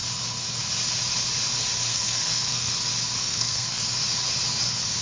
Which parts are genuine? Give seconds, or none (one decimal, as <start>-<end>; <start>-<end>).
0.0-1.9; 2.7-3.2; 3.8-5.0